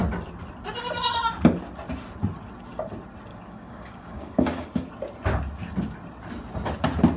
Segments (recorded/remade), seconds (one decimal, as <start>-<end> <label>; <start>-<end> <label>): 0.0-3.3 recorded; 3.3-4.9 remade; 4.9-7.2 recorded

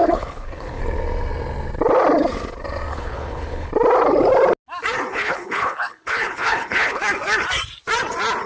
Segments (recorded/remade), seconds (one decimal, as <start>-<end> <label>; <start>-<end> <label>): 0.0-0.8 remade; 0.8-2.9 recorded; 2.9-3.7 remade; 3.7-5.1 recorded; 5.1-7.0 remade; 7.0-8.5 recorded

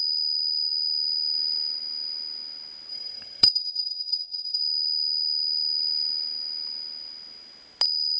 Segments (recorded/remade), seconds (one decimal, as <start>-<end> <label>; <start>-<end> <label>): 0.0-2.9 recorded; 2.9-4.6 remade; 4.6-8.2 recorded

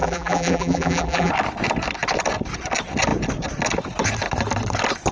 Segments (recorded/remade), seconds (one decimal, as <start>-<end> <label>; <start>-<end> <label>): 0.0-1.3 remade; 1.3-5.1 recorded